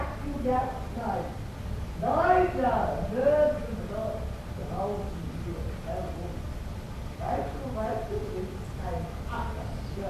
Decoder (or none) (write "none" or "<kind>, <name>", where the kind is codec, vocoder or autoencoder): none